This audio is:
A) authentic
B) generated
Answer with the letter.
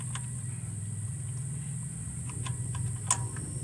A